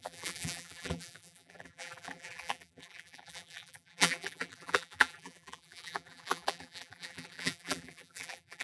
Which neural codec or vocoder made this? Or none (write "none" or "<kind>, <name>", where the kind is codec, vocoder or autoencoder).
vocoder, BigVGAN v2